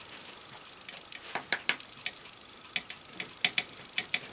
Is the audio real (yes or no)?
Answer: yes